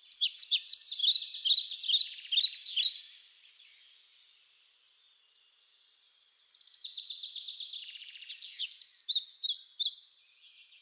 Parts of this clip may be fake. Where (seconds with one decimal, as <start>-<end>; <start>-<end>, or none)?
none